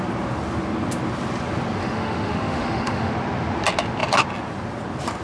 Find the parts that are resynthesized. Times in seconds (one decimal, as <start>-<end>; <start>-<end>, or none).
1.8-3.1